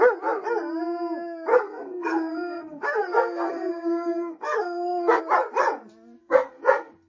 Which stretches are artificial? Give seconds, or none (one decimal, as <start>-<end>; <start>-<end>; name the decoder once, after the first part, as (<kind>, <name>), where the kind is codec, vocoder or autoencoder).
1.5-5.2 (codec, SNAC); 6.2-7.1